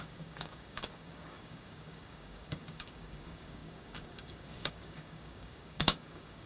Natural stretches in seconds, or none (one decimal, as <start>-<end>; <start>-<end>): none